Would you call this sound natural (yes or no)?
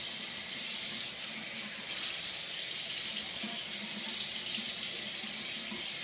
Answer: yes